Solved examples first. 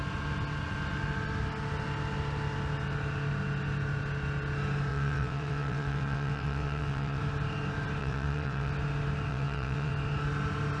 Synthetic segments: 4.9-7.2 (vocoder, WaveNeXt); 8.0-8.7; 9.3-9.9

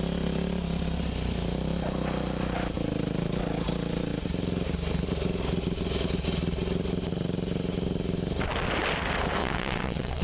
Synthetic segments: 9.4-10.2 (vocoder, WaveNeXt)

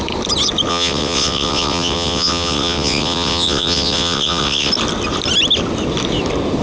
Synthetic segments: 0.7-4.7 (vocoder, WaveNeXt)

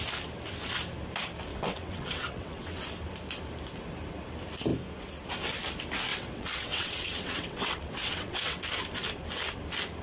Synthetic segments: 1.5-2.8 (vocoder, WaveNeXt); 6.1-8.6

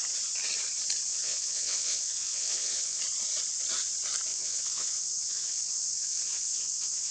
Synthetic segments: 1.1-3.0 (vocoder, WaveNeXt); 4.3-7.1

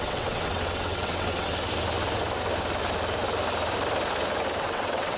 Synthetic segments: 0.0-1.5 (vocoder, WaveNeXt); 4.6-5.2

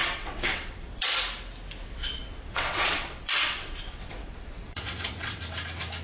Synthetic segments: 0.0-1.2 (vocoder, WaveNeXt); 1.8-5.4

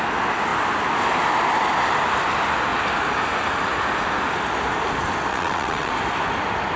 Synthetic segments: 5.3-5.9 (vocoder, WaveNeXt)